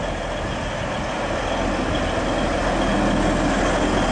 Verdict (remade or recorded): recorded